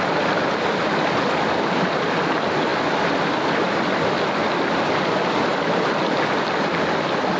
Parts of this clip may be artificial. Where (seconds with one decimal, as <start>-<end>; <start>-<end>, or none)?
none

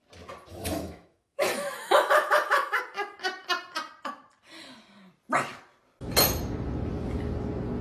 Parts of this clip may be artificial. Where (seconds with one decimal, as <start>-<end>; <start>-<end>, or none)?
0.5-2.8

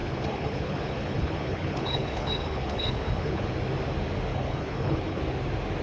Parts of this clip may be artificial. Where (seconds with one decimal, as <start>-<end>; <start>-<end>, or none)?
0.0-3.5; 4.3-5.2

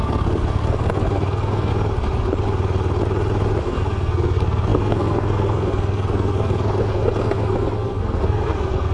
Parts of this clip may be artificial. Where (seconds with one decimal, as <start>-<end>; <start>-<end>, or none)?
0.0-1.7; 3.6-8.9

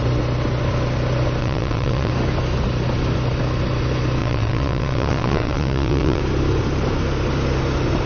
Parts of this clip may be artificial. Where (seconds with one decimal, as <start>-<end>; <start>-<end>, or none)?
1.4-2.1; 4.2-6.2

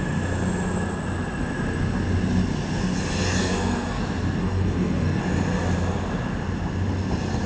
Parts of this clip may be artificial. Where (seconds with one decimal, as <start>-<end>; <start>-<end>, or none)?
3.4-4.0; 4.4-5.2